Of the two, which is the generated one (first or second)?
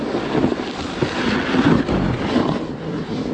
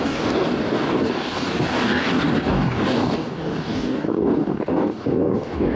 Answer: second